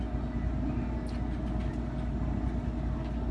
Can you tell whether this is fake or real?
real